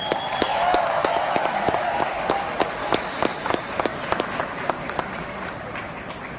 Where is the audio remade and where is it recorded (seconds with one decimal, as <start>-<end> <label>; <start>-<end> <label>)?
0.0-0.5 recorded; 0.5-2.0 remade; 2.0-2.8 recorded; 2.8-3.5 remade; 3.5-6.4 recorded